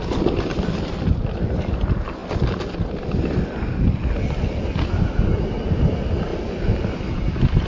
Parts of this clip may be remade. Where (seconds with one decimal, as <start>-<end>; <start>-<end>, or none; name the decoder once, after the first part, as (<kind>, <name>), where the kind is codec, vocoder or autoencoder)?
none

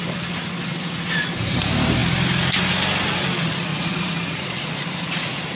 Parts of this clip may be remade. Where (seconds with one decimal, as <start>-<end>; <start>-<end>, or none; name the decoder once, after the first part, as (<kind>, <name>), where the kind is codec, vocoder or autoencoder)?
3.7-4.7 (vocoder, Vocos)

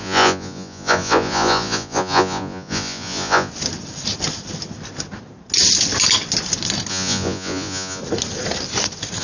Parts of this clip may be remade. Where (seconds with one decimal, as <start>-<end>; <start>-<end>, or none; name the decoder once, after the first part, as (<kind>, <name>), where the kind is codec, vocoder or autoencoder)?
0.0-3.5 (vocoder, Vocos); 6.9-8.0